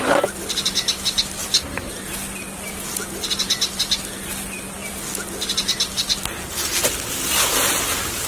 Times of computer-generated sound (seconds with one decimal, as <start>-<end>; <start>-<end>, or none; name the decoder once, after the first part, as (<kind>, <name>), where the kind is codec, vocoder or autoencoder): none